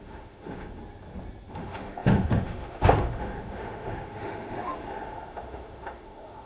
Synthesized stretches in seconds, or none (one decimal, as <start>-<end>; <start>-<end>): 0.0-0.8; 1.5-6.5